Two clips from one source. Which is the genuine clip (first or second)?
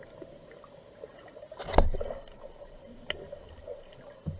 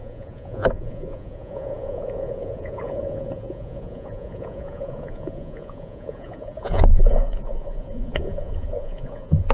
first